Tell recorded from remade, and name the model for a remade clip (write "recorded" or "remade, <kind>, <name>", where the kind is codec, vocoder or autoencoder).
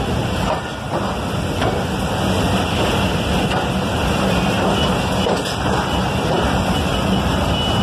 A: recorded